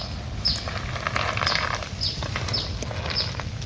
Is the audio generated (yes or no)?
no